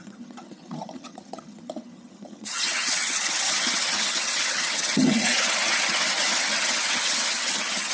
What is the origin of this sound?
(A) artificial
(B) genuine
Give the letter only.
A